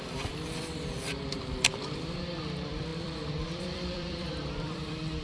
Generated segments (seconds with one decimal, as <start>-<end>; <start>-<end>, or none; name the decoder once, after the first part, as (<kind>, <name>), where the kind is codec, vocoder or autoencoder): 0.0-5.2 (vocoder, BigVGAN v2)